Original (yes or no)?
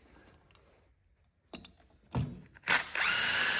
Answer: yes